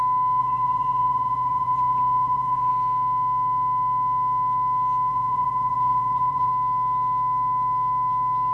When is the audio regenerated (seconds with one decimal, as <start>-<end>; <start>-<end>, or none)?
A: 0.4-2.7; 5.1-6.5